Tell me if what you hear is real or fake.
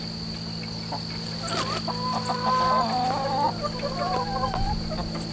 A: real